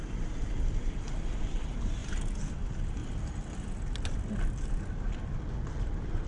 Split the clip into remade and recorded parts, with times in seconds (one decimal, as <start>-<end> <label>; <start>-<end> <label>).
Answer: 0.0-1.4 remade; 1.4-6.3 recorded